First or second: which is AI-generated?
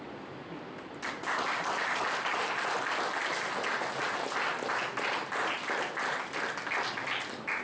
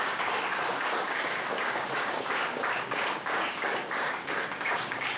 second